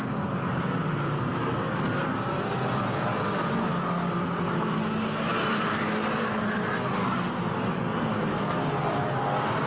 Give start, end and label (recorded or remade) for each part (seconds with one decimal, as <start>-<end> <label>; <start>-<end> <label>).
0.0-9.7 recorded